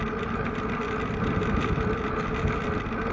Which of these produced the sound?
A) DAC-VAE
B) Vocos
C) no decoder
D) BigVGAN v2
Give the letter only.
C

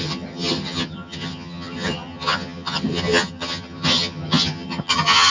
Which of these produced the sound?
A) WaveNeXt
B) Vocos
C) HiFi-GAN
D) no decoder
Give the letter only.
C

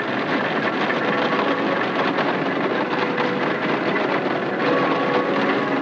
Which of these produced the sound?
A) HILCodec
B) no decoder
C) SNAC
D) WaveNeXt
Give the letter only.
B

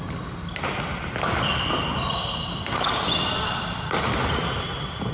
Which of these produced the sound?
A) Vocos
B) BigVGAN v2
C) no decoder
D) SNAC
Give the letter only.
B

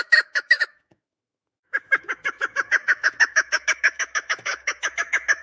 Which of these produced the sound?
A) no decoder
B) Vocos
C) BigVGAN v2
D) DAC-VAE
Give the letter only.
D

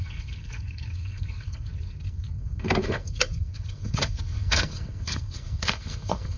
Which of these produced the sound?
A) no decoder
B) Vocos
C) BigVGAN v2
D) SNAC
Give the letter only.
D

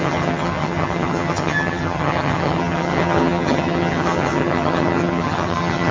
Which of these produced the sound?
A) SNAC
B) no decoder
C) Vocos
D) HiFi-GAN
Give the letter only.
D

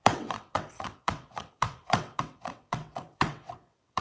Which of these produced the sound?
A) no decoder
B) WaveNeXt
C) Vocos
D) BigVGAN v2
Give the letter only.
B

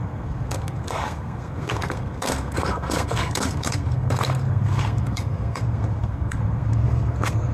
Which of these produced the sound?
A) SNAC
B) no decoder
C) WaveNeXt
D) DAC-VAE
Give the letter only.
A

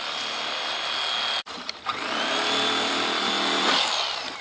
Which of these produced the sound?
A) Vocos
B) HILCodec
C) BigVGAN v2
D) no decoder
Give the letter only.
D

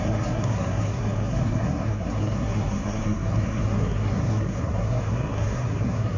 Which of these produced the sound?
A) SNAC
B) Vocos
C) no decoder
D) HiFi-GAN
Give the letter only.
A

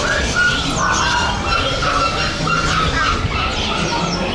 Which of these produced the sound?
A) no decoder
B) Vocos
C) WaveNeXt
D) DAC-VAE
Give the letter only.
A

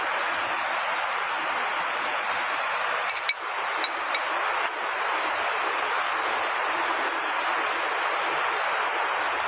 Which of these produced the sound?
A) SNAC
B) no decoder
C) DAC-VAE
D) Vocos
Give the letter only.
B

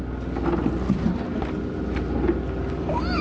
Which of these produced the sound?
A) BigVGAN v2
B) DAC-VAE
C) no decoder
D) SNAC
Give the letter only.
C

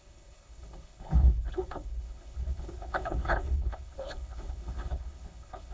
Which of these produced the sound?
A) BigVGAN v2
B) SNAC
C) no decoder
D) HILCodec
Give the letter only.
D